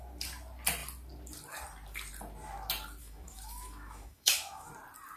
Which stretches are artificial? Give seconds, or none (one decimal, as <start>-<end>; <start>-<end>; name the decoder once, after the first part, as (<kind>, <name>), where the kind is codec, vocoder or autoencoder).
3.0-4.7 (autoencoder, DAC-VAE)